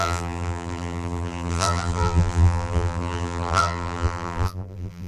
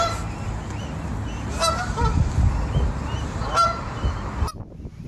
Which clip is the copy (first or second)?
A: first